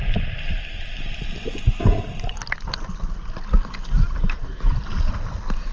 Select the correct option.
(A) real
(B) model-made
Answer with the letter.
A